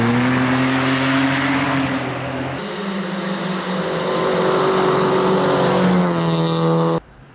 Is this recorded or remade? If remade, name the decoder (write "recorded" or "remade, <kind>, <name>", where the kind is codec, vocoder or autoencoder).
recorded